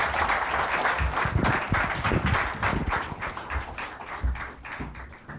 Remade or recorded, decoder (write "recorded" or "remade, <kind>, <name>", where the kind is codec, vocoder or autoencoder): recorded